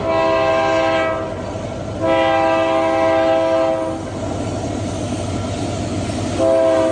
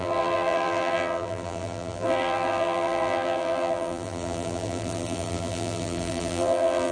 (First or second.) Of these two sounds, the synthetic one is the second